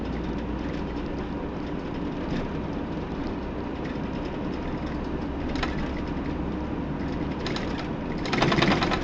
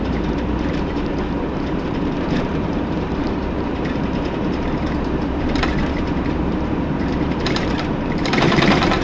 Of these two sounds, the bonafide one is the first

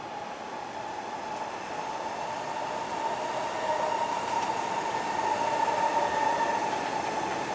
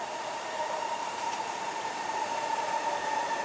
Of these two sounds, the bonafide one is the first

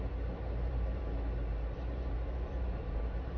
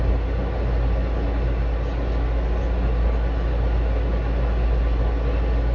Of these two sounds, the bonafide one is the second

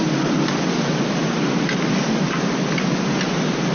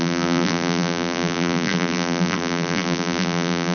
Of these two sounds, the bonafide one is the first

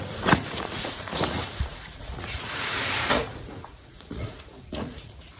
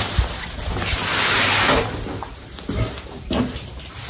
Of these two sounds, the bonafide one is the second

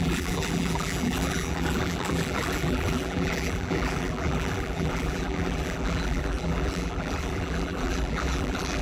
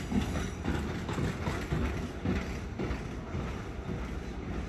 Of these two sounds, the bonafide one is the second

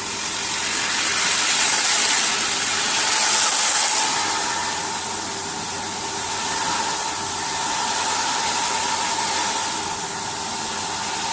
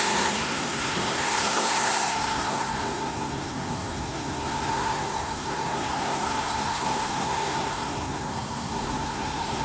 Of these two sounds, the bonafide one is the first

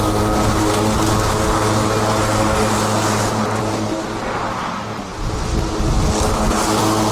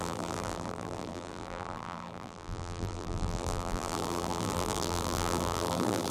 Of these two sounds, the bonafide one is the first